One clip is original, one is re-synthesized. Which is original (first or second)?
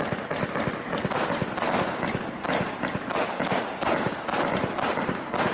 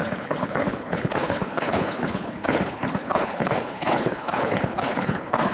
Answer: first